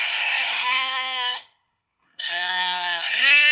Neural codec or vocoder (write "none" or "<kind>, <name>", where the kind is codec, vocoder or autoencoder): codec, SNAC